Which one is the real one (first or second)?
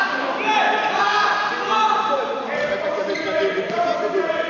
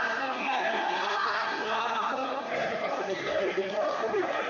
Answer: first